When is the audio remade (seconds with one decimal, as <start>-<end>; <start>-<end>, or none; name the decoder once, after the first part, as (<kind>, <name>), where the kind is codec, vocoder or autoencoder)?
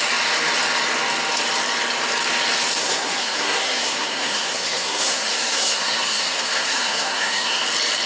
2.8-7.6 (codec, SNAC)